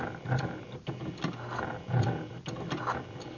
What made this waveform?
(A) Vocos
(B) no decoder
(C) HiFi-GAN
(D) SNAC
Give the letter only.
B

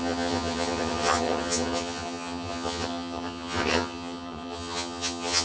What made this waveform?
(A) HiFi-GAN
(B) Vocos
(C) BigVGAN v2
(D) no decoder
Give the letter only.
A